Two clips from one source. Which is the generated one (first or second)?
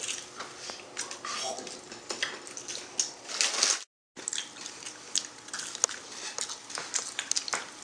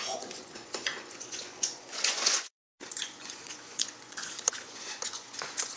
second